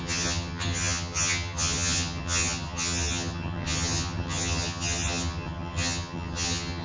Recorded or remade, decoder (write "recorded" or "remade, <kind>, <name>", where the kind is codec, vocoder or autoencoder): remade, vocoder, HiFi-GAN